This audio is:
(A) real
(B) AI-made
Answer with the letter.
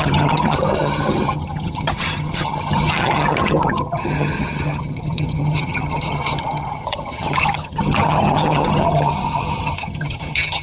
B